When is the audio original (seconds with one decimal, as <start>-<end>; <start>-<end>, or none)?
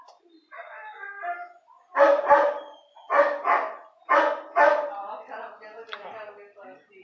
0.0-7.0